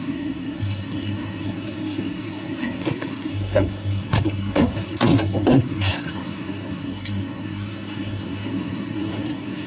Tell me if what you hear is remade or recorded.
remade